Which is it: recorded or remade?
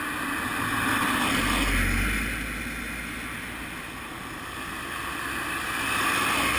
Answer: recorded